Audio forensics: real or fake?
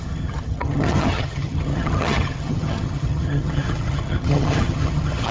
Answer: fake